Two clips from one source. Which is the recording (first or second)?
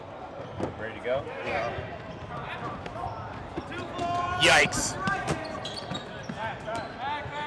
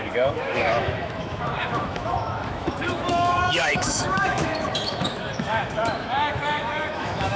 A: first